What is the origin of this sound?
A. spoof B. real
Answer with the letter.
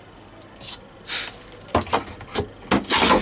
B